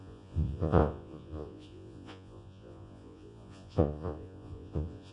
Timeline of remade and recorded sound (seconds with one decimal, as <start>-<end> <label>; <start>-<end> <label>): 0.0-5.1 remade